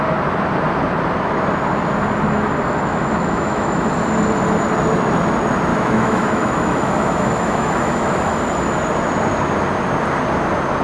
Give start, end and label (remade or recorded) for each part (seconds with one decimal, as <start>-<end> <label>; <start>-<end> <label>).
0.0-2.9 recorded; 2.9-3.9 remade; 3.9-5.7 recorded; 5.7-8.4 remade; 8.4-10.8 recorded